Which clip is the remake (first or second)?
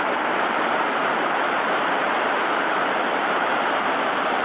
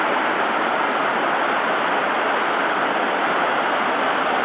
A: first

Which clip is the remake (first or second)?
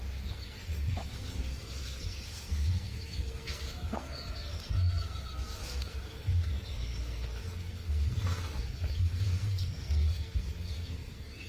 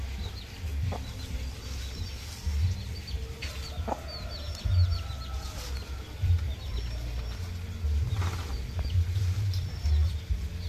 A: first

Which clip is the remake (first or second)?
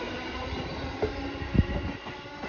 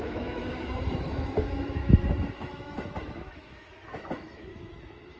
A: second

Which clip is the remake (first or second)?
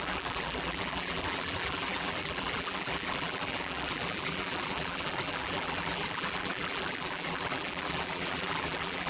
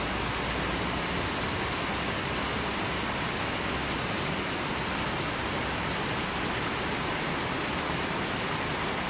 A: first